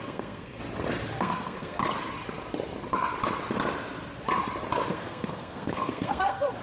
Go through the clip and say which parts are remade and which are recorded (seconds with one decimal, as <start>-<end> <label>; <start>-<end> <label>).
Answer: 0.0-0.6 remade; 0.6-1.2 recorded; 1.2-1.8 remade; 1.8-4.9 recorded; 4.9-6.6 remade